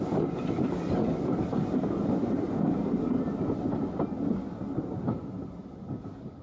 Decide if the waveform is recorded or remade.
recorded